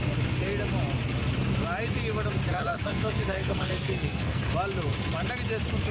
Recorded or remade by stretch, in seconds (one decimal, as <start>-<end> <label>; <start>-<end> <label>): 0.0-2.5 recorded; 2.5-4.5 remade; 4.5-5.9 recorded